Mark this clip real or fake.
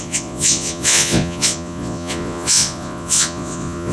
fake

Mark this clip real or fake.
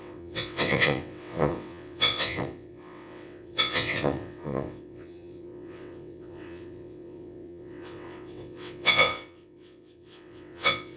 fake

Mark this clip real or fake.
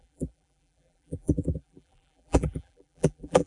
fake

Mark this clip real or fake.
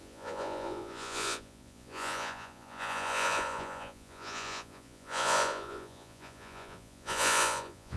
fake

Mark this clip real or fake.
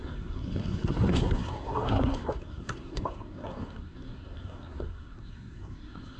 fake